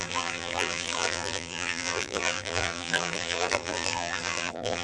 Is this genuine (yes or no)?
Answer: no